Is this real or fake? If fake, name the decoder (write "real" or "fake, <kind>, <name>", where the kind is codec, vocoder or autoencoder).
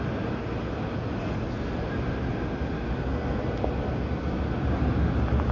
real